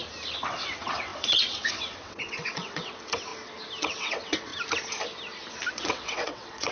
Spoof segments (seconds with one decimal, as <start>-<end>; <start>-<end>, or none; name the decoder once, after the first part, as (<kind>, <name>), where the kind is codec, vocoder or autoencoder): 0.5-3.3 (vocoder, WaveNeXt); 3.8-4.5; 5.7-6.7